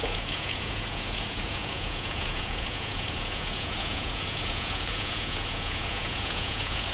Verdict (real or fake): fake